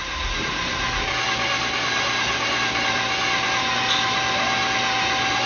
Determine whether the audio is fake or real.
real